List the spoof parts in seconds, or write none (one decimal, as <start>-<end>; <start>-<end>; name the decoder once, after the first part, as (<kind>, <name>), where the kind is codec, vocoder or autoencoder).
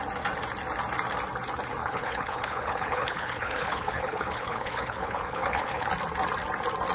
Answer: 1.8-5.9 (codec, HILCodec)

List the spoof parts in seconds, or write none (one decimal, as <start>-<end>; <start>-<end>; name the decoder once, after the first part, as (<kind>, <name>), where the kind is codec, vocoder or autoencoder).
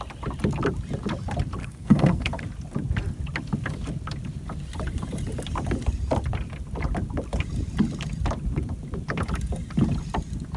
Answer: 1.6-2.4 (codec, SNAC)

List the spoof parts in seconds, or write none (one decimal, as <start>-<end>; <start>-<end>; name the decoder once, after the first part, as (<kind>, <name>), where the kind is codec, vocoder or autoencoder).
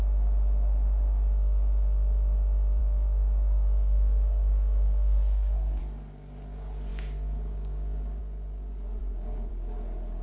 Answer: 2.8-5.8 (codec, DAC); 6.9-8.2; 9.0-9.5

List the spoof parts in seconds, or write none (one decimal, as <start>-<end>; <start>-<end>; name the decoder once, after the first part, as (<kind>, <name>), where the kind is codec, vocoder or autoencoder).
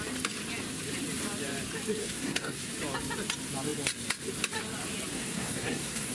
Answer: 2.0-2.7 (codec, SNAC); 5.1-6.1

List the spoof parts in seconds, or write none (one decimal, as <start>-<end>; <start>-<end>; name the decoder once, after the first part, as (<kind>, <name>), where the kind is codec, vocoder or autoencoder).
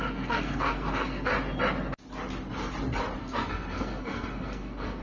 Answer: 0.0-1.3 (codec, SNAC); 3.2-5.0